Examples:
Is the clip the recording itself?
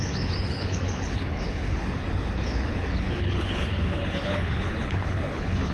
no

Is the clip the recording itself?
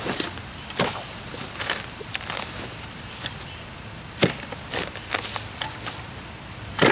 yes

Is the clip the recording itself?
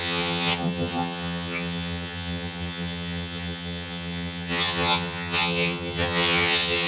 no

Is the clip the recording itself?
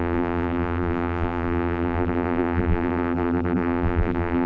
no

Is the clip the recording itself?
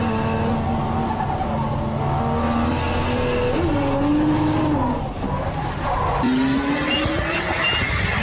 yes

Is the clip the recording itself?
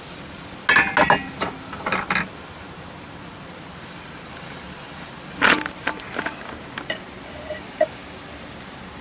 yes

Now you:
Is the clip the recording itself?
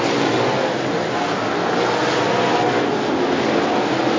yes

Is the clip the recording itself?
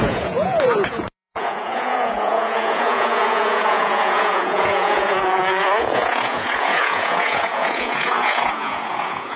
no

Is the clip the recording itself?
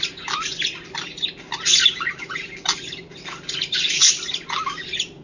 yes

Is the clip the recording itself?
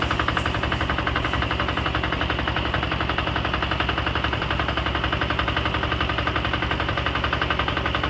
yes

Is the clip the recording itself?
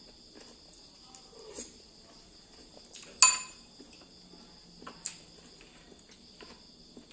yes